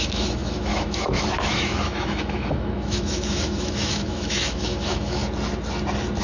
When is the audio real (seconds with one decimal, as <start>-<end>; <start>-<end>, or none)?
5.2-6.2